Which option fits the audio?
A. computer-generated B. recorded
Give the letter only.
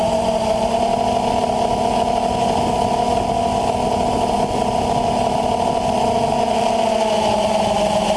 B